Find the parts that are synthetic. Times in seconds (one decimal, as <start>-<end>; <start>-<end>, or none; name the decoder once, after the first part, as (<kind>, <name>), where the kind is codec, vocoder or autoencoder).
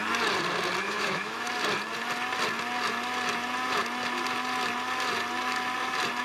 0.8-1.5 (autoencoder, DAC-VAE)